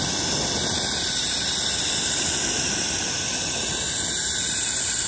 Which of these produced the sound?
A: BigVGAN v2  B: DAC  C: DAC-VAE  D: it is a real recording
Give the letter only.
D